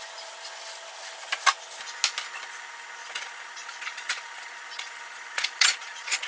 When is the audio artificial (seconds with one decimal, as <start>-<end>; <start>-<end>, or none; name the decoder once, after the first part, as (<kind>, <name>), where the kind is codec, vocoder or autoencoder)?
3.0-6.3 (vocoder, Vocos)